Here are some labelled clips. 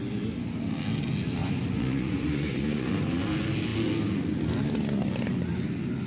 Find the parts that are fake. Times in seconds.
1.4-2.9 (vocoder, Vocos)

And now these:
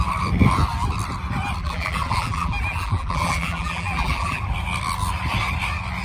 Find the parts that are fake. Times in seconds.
1.6-4.4 (vocoder, BigVGAN v2)

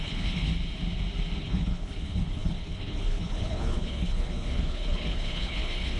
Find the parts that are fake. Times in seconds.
0.0-0.5 (codec, HILCodec); 1.4-6.0

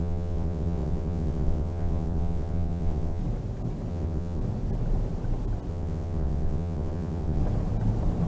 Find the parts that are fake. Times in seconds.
0.0-3.2 (vocoder, WaveNeXt); 3.9-4.4; 5.7-7.4

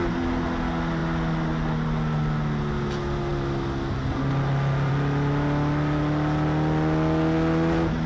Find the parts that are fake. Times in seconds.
none

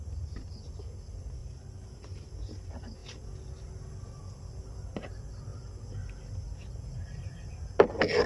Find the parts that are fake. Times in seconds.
1.4-2.3 (vocoder, BigVGAN v2)